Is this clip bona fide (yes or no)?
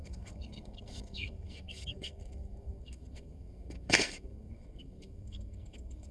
no